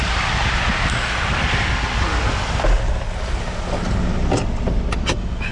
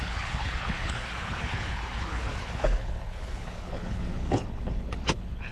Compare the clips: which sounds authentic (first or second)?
first